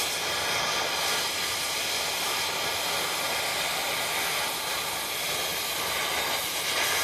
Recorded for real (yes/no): yes